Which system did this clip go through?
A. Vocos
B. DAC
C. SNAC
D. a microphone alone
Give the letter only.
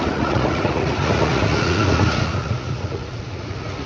A